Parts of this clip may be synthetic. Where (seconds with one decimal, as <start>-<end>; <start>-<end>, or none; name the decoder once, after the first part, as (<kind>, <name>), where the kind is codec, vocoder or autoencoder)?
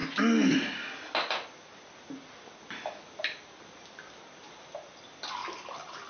3.7-6.1 (vocoder, BigVGAN v2)